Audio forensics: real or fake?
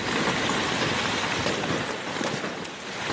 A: real